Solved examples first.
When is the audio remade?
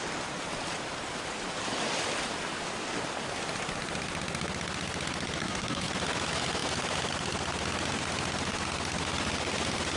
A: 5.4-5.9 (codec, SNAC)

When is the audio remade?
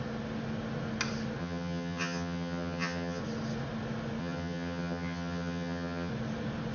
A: 1.4-3.2 (vocoder, HiFi-GAN); 4.2-6.1